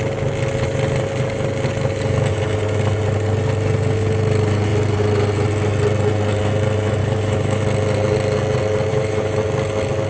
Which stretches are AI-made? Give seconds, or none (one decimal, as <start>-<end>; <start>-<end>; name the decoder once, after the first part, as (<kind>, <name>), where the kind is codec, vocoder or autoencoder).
7.0-7.6 (autoencoder, DAC-VAE); 8.9-9.4